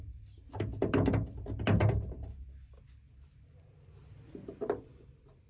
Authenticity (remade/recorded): recorded